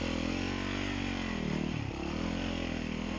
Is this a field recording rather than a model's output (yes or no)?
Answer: yes